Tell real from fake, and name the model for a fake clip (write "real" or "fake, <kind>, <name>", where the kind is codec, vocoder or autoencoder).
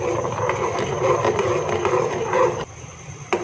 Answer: fake, vocoder, BigVGAN v2